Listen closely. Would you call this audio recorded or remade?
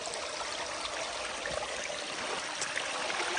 recorded